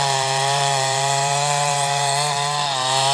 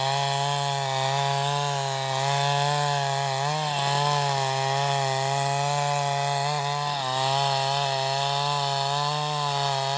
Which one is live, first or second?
second